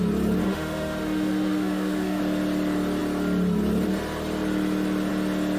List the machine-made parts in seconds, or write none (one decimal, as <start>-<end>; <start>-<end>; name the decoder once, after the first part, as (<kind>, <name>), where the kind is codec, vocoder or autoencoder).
0.4-2.2 (autoencoder, DAC-VAE)

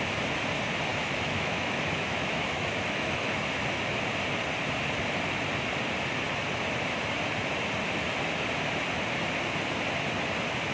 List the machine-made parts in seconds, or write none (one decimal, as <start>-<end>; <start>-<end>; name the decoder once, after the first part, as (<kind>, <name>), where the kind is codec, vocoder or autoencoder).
0.9-3.4 (autoencoder, DAC-VAE)